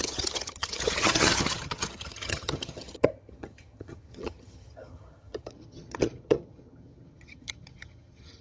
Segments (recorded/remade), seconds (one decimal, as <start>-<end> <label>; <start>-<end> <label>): 0.0-8.4 remade